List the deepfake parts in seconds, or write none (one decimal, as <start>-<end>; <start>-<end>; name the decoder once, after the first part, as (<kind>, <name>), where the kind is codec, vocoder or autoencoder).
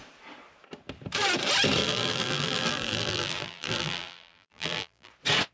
1.8-5.1 (vocoder, BigVGAN v2)